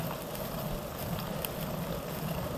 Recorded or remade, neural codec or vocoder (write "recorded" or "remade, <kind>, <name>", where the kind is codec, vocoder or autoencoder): recorded